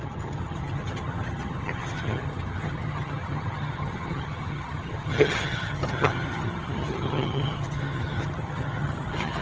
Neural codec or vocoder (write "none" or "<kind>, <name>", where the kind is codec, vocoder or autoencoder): vocoder, HiFi-GAN